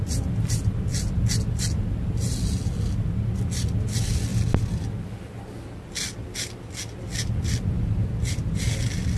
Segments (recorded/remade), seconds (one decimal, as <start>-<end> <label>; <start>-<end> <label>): 0.0-0.9 recorded; 0.9-2.3 remade; 2.3-9.2 recorded